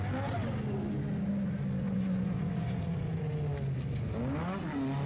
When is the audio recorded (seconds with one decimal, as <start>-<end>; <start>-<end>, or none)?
0.0-1.8; 3.2-5.1